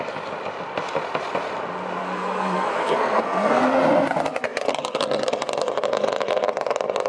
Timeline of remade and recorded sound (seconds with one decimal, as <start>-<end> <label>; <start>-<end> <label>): 0.0-2.0 recorded; 2.0-3.6 remade; 3.6-7.1 recorded